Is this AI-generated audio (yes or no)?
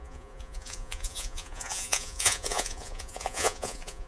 yes